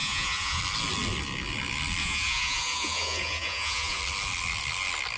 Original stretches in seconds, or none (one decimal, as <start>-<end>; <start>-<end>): 0.6-2.0; 4.0-5.2